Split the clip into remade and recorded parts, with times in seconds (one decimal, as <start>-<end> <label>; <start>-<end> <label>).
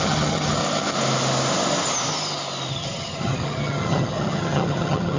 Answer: 0.0-0.6 remade; 0.6-2.7 recorded; 2.7-5.2 remade